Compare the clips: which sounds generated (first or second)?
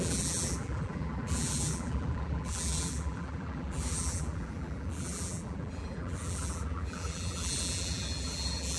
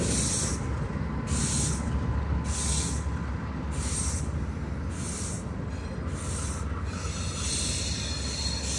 first